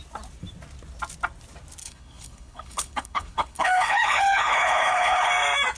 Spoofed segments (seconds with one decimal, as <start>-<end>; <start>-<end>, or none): 1.8-5.3